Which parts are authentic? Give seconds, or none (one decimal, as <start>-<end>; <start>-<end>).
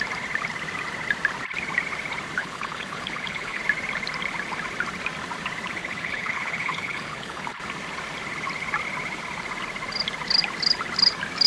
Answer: 0.0-2.4; 3.6-5.8; 7.6-11.5